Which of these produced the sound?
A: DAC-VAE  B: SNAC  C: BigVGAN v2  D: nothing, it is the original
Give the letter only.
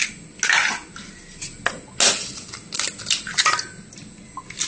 D